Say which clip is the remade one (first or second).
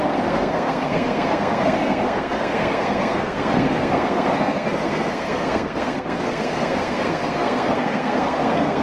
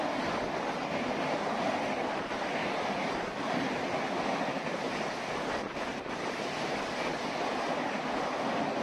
first